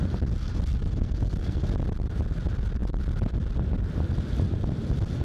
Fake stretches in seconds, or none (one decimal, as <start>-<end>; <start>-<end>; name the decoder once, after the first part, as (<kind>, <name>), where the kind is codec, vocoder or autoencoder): 1.0-1.6 (codec, SNAC)